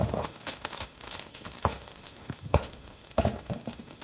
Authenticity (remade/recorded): remade